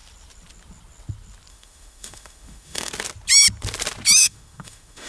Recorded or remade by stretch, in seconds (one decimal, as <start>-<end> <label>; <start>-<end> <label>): 0.0-1.5 recorded; 1.5-2.9 remade; 2.9-4.2 recorded; 4.2-5.1 remade